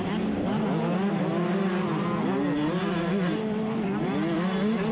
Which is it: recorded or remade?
recorded